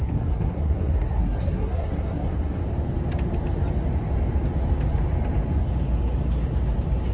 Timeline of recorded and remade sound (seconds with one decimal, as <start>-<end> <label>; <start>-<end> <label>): 0.0-2.6 remade; 2.6-7.1 recorded